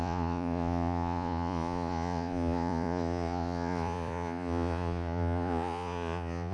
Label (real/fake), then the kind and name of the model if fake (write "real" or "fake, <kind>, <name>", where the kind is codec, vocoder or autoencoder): fake, vocoder, Vocos